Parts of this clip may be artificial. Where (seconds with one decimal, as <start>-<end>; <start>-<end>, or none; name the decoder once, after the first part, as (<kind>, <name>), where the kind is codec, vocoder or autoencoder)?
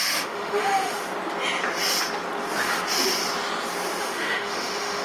0.0-1.0 (autoencoder, DAC-VAE); 4.0-5.0